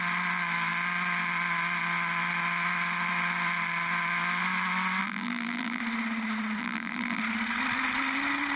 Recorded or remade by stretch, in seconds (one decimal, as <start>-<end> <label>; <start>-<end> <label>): 0.0-5.0 recorded; 5.0-5.8 remade; 5.8-6.6 recorded; 6.6-7.2 remade; 7.2-8.6 recorded